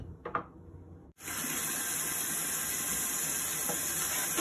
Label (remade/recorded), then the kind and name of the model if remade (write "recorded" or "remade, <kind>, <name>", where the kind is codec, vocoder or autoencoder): recorded